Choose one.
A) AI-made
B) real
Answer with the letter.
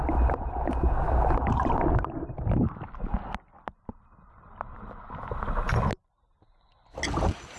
B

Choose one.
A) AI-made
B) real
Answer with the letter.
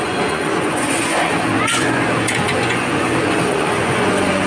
A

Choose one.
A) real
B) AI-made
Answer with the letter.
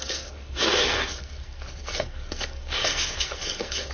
B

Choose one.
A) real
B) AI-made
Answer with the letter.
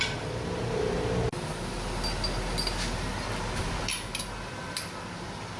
A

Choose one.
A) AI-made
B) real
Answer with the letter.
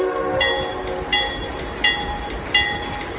B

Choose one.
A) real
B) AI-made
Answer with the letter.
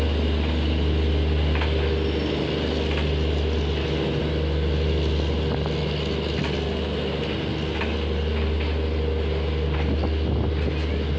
A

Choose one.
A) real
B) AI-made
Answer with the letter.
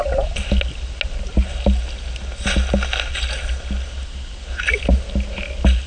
A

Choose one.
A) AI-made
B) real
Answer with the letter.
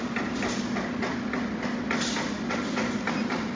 B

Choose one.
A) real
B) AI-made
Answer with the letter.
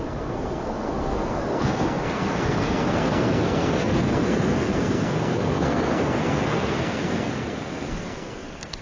B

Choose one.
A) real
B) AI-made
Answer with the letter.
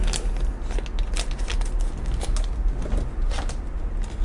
A